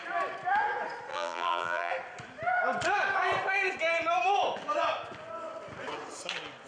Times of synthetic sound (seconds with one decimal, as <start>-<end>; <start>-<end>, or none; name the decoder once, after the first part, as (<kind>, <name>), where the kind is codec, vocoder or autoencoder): 1.1-1.9 (vocoder, BigVGAN v2)